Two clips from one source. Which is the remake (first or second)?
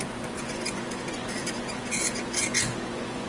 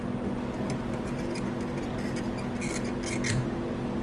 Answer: first